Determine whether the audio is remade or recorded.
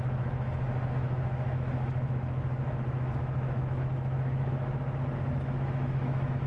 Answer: remade